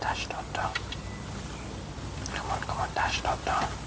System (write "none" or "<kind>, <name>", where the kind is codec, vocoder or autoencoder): none